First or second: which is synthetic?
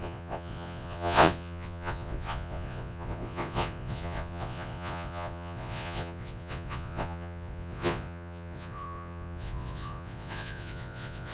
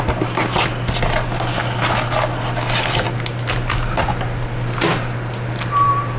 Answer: first